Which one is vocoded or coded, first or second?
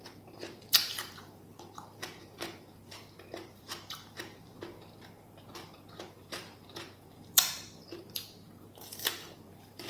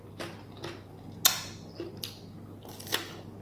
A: first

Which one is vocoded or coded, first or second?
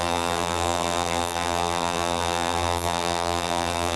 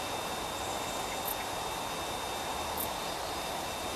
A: first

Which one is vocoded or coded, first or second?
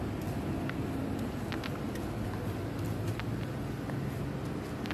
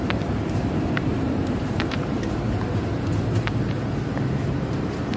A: second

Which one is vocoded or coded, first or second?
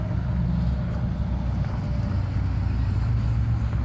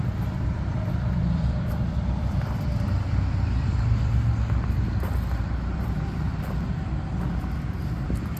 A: second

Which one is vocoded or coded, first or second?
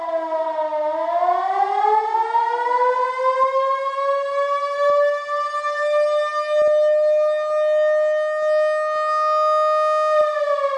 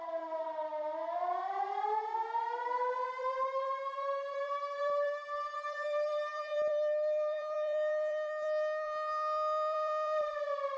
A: second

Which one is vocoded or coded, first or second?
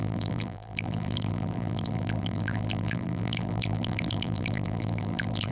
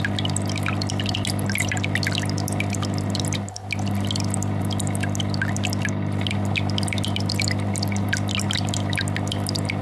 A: first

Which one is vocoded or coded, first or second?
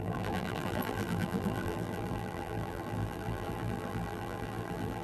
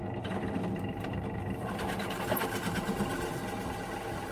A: first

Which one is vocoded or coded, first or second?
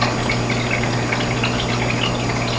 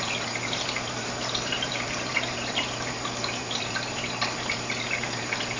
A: second